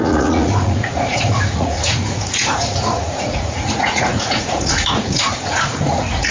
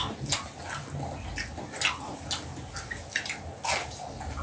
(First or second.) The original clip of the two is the second